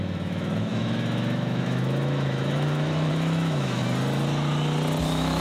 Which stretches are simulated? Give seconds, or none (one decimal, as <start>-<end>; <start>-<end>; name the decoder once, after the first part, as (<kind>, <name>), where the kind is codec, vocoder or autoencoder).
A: 0.0-3.8 (autoencoder, DAC-VAE); 5.0-5.4